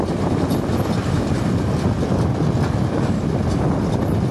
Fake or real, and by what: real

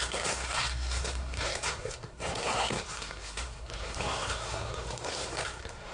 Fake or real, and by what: fake, codec, SNAC